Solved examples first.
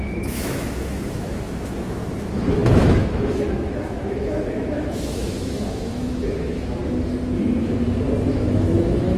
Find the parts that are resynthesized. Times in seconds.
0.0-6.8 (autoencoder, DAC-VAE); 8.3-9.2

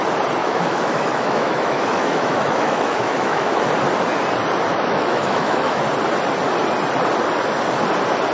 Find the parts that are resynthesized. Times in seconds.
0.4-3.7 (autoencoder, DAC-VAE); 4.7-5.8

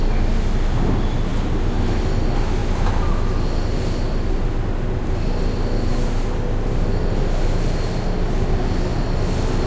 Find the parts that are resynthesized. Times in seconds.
none

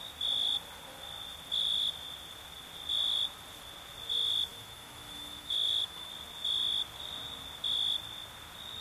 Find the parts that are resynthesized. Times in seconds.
4.5-6.1 (autoencoder, DAC-VAE)